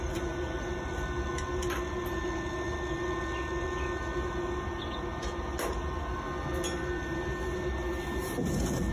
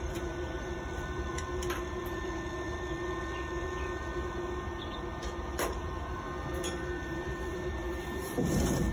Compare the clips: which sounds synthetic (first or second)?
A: second